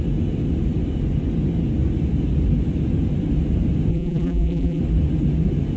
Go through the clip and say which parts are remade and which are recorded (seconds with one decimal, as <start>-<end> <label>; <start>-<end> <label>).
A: 0.0-3.9 recorded; 3.9-4.8 remade; 4.8-5.8 recorded

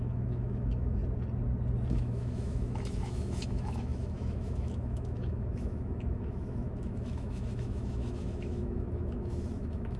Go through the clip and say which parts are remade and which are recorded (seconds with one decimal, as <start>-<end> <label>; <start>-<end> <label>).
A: 0.0-1.0 remade; 1.0-1.9 recorded; 1.9-10.0 remade

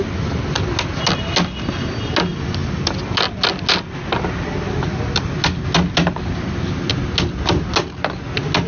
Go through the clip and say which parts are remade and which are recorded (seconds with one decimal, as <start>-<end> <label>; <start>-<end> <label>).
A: 0.0-8.7 recorded

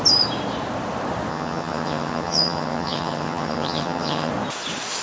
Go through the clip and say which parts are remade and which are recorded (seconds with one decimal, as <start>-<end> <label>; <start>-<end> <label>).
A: 0.0-1.3 recorded; 1.3-4.3 remade; 4.3-5.0 recorded

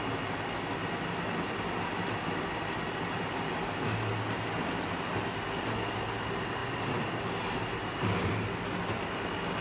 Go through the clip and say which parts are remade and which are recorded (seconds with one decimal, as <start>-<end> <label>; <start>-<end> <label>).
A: 0.0-9.6 recorded